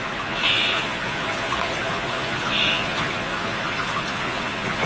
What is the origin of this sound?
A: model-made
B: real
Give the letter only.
A